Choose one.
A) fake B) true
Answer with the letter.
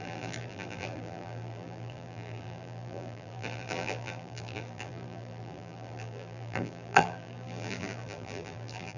A